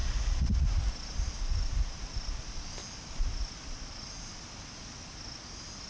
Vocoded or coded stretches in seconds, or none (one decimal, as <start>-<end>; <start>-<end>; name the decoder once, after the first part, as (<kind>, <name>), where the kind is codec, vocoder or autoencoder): 0.0-0.9 (vocoder, Vocos)

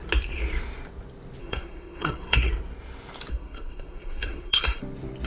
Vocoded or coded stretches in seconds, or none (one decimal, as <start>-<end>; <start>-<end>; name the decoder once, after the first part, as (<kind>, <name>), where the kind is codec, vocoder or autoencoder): 1.4-2.5 (codec, SNAC); 3.3-4.8

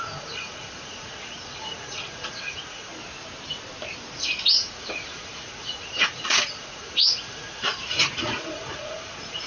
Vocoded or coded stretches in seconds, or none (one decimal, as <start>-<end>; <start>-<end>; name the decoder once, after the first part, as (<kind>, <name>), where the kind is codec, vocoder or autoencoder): 0.0-2.9 (vocoder, Vocos); 4.5-9.5

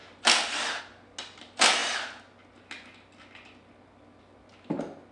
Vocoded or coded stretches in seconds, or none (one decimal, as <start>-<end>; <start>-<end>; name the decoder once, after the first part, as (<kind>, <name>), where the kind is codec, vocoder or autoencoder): none

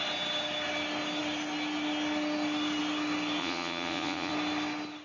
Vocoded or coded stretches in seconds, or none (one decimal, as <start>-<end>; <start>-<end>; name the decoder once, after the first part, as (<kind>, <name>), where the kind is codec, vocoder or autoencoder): 3.4-4.3 (vocoder, Vocos)

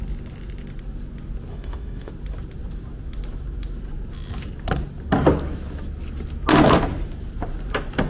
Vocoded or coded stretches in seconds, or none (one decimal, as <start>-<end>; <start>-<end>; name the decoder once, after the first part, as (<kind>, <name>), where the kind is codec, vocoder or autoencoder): 1.5-2.1 (autoencoder, DAC-VAE)

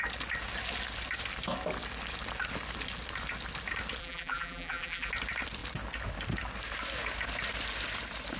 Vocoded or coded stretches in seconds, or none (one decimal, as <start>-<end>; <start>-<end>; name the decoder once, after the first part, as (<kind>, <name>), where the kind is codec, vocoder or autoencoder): 4.0-5.1 (vocoder, BigVGAN v2)